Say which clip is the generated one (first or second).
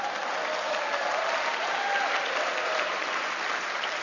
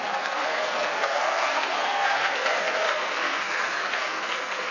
second